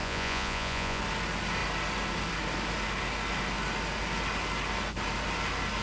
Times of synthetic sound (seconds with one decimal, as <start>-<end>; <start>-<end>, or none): 0.0-1.0